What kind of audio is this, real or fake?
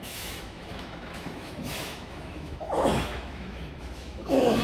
fake